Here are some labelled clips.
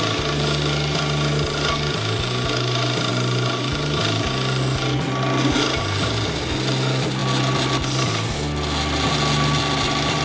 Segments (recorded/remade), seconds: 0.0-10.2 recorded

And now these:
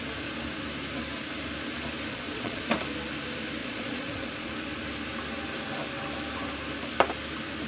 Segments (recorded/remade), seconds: 0.0-2.1 recorded; 2.1-2.6 remade; 2.6-3.6 recorded; 3.6-4.5 remade; 4.5-7.7 recorded

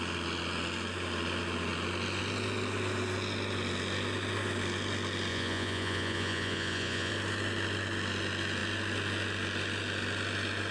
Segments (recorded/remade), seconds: 0.0-5.3 recorded; 5.3-7.1 remade; 7.1-10.7 recorded

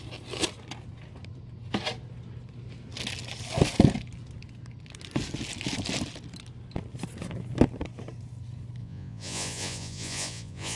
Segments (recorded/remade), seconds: 0.0-8.8 recorded; 8.8-10.8 remade

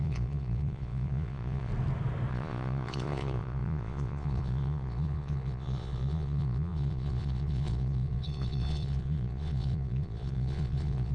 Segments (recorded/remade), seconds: 0.0-1.7 remade; 1.7-2.3 recorded; 2.3-11.1 remade

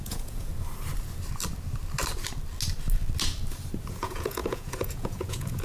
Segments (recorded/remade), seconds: 0.0-0.5 remade; 0.5-3.9 recorded; 3.9-5.6 remade